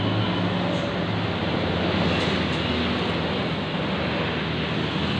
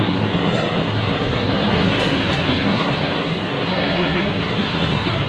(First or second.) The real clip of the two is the first